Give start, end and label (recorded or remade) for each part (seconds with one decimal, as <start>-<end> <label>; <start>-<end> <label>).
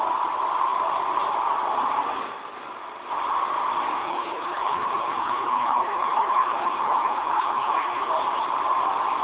0.0-4.0 recorded; 4.0-8.1 remade; 8.1-9.2 recorded